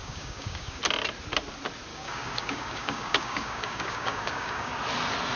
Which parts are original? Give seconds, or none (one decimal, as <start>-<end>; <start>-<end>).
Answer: 0.8-1.9; 4.7-5.4